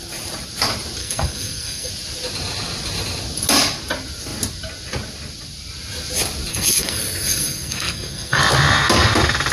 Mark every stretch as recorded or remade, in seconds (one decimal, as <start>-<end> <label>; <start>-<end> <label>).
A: 0.0-1.0 recorded; 1.0-1.9 remade; 1.9-6.5 recorded; 6.5-8.4 remade; 8.4-9.5 recorded